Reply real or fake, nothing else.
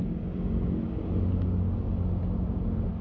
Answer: real